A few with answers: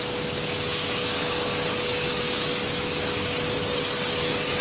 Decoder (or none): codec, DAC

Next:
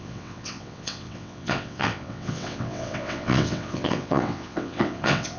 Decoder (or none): vocoder, WaveNeXt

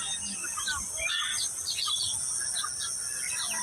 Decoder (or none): none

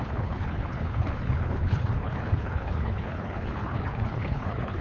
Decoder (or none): codec, HILCodec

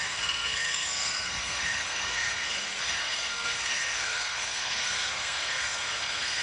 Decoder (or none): codec, SNAC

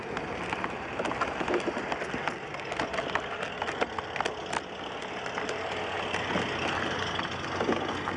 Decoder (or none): none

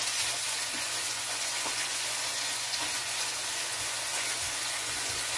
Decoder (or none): vocoder, Vocos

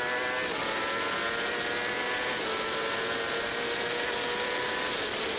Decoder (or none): none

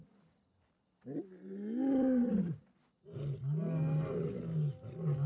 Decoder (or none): none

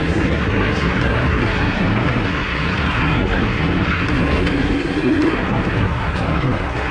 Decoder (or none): codec, SNAC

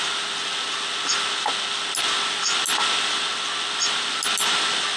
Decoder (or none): none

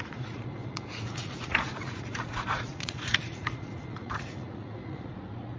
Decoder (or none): vocoder, Vocos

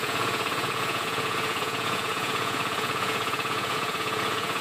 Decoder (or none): vocoder, Vocos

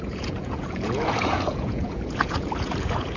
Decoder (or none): vocoder, Vocos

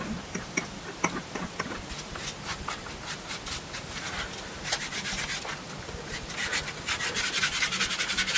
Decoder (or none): none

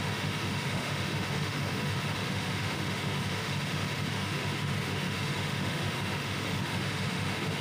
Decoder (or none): autoencoder, DAC-VAE